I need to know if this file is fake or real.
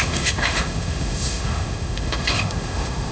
fake